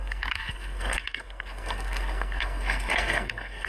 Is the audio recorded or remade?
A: remade